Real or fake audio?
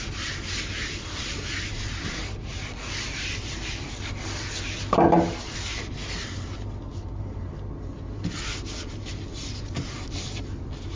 real